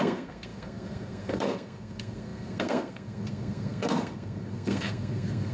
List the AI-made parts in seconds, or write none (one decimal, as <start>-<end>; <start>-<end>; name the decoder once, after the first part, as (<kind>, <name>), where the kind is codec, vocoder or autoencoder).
0.0-5.5 (codec, SNAC)